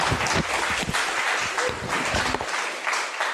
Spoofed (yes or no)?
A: no